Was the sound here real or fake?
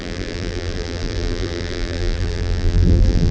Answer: fake